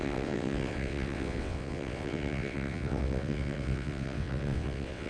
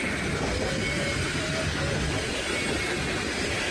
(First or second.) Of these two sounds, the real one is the second